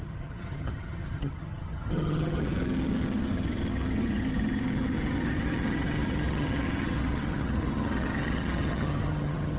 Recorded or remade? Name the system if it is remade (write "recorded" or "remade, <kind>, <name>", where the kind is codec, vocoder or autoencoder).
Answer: remade, vocoder, HiFi-GAN